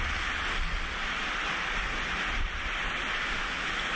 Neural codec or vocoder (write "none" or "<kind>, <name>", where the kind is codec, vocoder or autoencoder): none